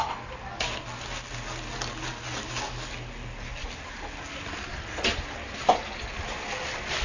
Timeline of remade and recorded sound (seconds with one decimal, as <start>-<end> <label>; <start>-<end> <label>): 0.0-7.0 recorded